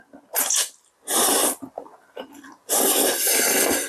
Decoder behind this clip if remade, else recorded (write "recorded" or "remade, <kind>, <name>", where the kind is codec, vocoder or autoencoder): recorded